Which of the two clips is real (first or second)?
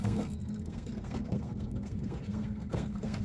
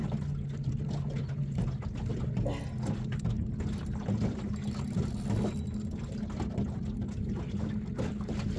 second